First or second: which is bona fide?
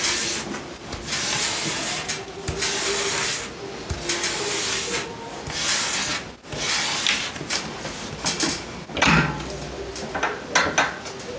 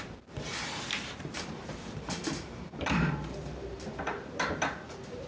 first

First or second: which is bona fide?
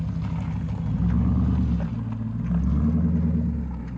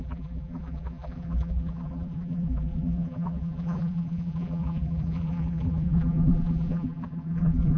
first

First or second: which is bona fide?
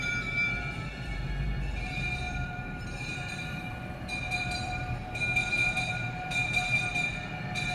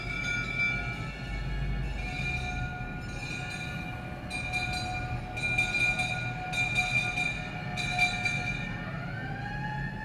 second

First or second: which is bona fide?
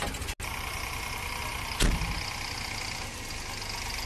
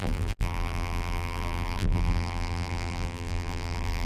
first